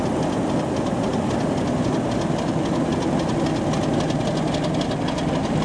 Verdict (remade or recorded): recorded